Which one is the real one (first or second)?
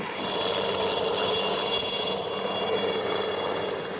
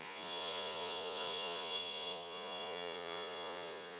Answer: first